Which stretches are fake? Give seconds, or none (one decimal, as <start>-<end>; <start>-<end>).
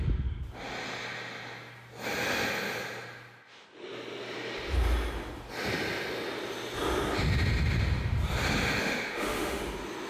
8.8-9.6